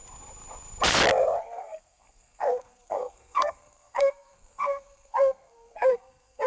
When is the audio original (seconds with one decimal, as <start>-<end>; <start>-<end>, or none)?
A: 0.0-1.4